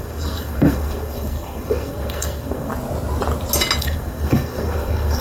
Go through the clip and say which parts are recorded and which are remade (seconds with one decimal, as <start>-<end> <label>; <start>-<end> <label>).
0.0-2.7 remade; 2.7-3.8 recorded; 3.8-5.2 remade